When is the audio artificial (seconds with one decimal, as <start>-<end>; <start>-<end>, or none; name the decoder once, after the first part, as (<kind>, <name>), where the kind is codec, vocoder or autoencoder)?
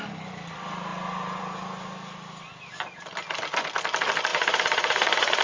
4.3-5.4 (vocoder, Vocos)